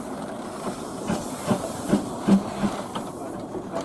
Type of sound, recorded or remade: remade